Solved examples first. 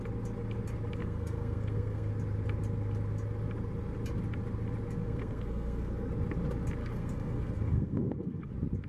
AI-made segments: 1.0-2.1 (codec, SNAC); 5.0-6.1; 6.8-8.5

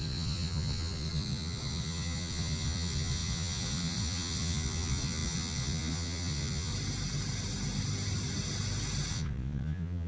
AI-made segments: 0.0-6.7 (vocoder, Vocos); 9.1-10.1